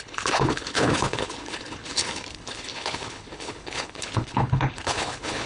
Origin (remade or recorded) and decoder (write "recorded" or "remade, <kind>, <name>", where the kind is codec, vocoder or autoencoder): remade, codec, HILCodec